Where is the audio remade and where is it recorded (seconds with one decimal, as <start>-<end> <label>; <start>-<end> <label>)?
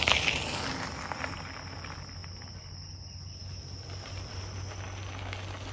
0.0-5.7 recorded